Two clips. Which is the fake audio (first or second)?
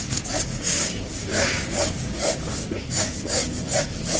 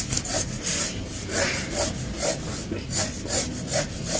first